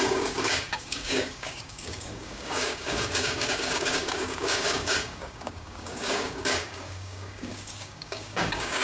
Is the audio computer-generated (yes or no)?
yes